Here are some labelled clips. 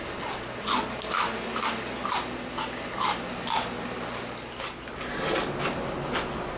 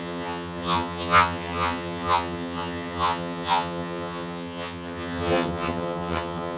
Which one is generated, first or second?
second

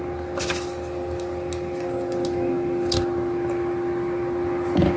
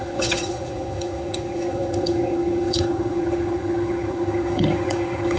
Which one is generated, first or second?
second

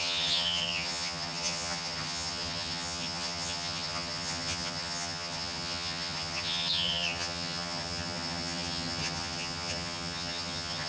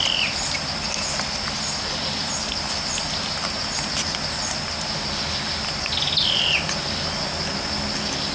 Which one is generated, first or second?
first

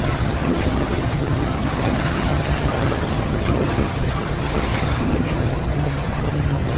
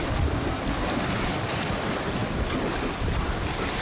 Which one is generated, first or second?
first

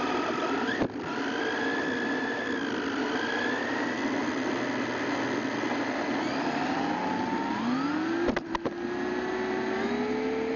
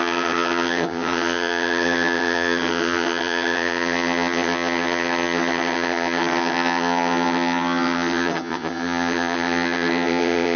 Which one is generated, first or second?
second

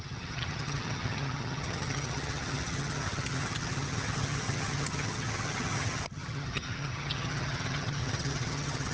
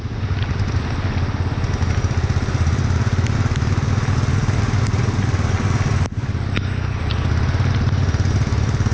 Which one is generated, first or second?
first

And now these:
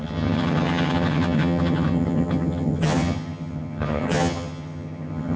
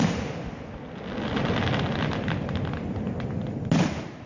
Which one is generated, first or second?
first